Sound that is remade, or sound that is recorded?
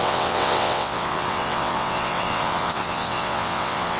remade